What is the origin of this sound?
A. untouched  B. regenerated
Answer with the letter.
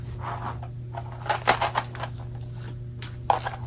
A